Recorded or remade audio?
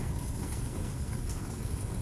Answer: remade